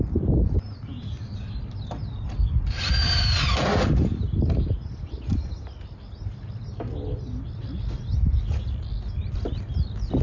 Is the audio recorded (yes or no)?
yes